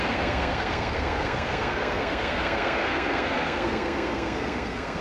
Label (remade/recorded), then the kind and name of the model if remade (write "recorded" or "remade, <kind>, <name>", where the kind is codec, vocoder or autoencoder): remade, codec, SNAC